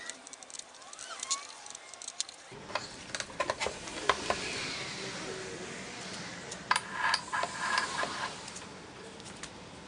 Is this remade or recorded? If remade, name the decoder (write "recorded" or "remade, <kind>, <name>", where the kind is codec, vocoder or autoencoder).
recorded